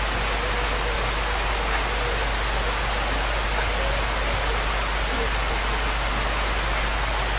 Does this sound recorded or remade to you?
recorded